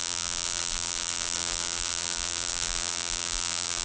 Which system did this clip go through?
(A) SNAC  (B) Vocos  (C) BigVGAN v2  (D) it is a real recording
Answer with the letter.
C